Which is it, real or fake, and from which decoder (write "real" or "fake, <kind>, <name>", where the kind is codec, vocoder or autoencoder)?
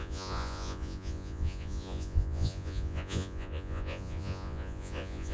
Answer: fake, vocoder, Vocos